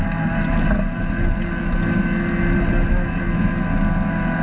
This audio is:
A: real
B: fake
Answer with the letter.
A